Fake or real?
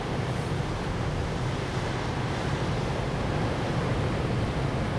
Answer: real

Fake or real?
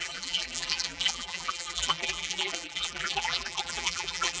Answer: fake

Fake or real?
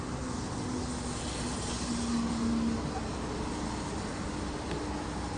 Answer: real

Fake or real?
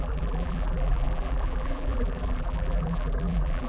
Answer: fake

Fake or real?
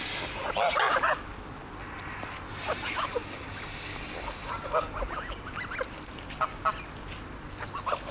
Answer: real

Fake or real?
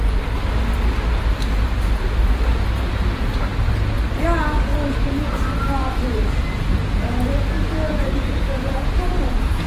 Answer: real